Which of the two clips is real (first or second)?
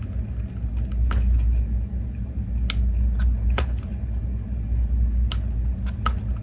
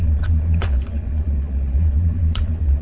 first